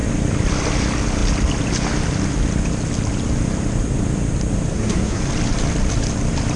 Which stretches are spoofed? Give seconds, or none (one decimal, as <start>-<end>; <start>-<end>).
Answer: 4.7-5.2